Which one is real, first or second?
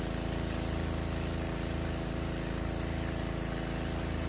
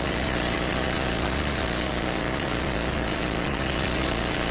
first